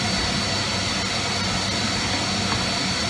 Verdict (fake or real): real